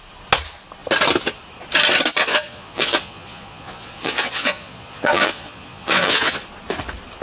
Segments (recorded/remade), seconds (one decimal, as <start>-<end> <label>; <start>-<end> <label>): 0.0-2.2 recorded; 2.2-6.4 remade; 6.4-7.2 recorded